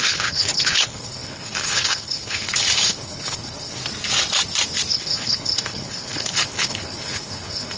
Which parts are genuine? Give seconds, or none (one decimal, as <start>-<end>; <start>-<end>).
3.8-4.9